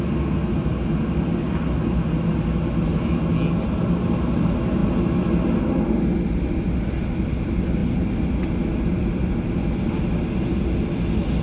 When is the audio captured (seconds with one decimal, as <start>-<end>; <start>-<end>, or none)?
0.0-11.4